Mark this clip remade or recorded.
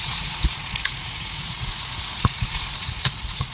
remade